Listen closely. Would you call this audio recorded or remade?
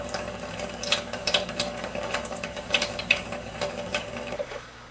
remade